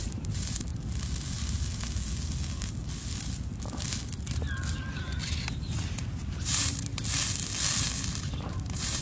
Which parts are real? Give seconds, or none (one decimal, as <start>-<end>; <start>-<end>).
0.7-5.6; 6.9-8.2